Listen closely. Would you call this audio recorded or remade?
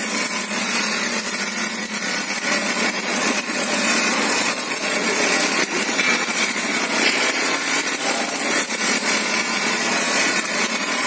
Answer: remade